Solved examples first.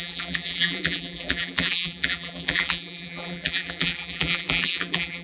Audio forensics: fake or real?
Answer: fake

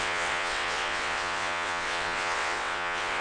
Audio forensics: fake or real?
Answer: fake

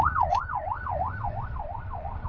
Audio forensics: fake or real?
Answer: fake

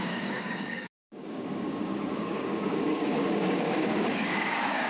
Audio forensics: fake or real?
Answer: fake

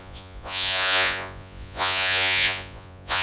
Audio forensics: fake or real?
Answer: fake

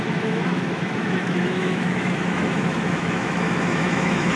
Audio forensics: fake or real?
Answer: fake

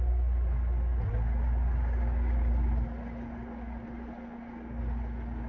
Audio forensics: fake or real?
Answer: real